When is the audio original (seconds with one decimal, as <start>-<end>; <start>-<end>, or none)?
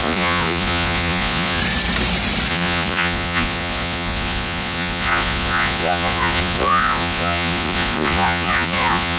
1.6-2.5